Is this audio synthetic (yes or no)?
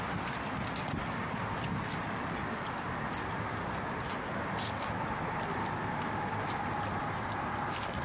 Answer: no